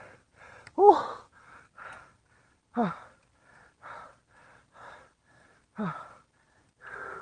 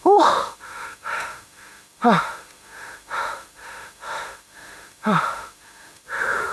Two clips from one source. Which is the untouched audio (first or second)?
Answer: first